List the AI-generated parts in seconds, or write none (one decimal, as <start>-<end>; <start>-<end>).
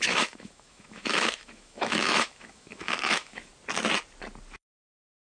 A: 0.0-3.5; 4.6-5.3